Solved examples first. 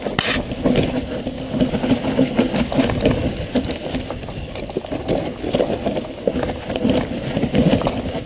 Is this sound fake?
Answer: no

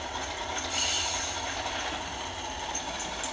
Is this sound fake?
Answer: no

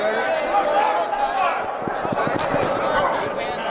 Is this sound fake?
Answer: no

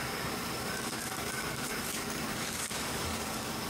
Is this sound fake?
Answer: yes